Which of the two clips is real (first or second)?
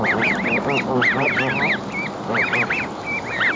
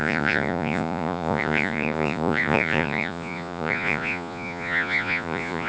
first